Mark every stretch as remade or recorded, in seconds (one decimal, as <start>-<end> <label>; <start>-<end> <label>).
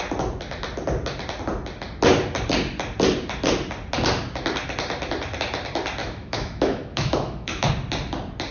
0.0-6.0 recorded; 6.0-7.7 remade; 7.7-8.5 recorded